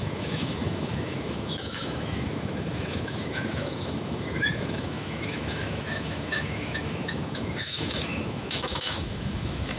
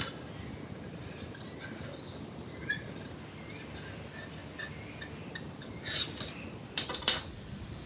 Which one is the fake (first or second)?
first